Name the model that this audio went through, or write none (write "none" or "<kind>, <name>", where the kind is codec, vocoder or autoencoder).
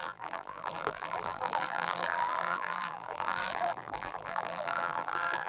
vocoder, BigVGAN v2